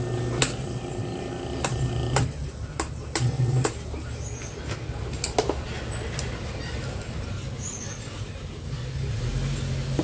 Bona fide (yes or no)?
yes